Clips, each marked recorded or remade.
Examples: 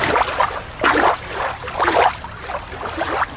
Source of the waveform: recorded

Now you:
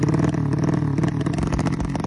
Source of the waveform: recorded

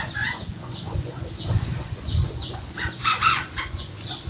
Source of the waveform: remade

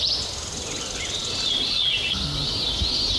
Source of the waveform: recorded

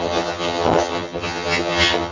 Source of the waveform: remade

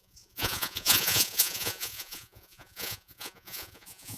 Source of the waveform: remade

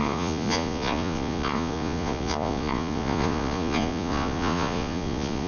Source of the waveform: remade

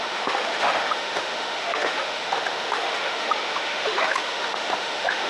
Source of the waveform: remade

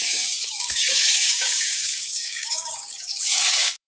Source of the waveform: remade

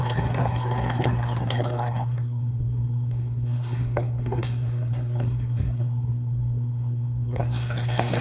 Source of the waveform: remade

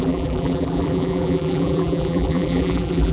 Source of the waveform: remade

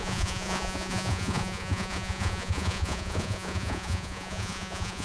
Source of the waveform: remade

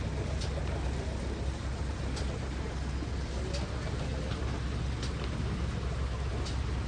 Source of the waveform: recorded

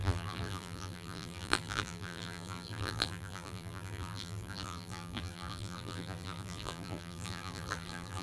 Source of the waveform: remade